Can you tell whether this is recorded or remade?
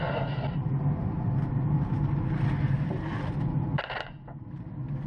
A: recorded